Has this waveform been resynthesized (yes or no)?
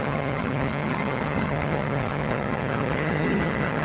yes